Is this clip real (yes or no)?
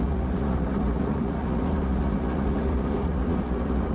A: no